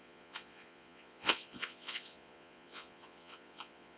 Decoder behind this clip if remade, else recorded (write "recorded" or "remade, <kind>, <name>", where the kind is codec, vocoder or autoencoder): remade, vocoder, Vocos